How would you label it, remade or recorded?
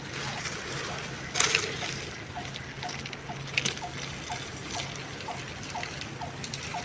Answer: recorded